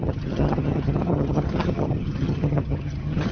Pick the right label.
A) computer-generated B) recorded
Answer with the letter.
A